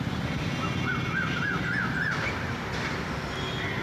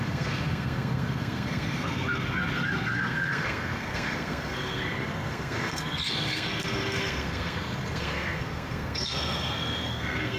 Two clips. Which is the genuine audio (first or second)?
first